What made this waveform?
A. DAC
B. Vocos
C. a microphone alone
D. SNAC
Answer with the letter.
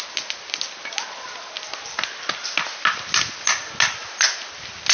C